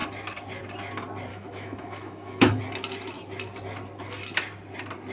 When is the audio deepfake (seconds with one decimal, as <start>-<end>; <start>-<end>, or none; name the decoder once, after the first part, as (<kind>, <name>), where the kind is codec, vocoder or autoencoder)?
1.3-2.6 (autoencoder, DAC-VAE)